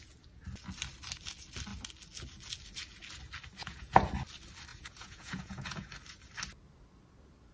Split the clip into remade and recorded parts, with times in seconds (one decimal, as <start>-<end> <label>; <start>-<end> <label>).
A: 0.0-3.6 recorded; 3.6-4.1 remade; 4.1-4.7 recorded; 4.7-5.9 remade; 5.9-7.5 recorded